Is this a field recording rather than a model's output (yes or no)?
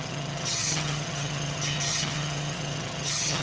no